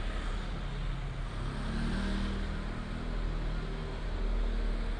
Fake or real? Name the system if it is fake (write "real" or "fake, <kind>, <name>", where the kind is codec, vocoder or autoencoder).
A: real